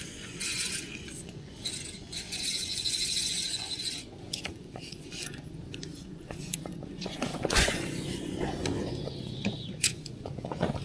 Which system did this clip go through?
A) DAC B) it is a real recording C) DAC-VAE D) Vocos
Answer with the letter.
D